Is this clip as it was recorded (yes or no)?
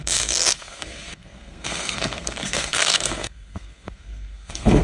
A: no